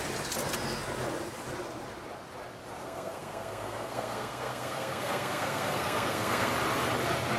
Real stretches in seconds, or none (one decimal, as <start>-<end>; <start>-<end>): 0.0-2.8; 6.5-7.4